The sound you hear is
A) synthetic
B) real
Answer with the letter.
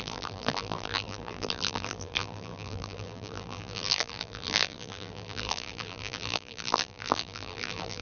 A